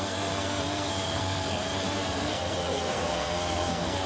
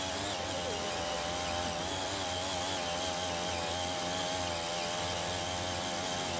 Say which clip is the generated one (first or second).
first